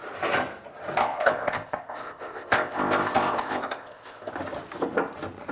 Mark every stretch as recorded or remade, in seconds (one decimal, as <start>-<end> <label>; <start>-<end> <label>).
0.0-1.0 recorded; 1.0-4.3 remade; 4.3-5.5 recorded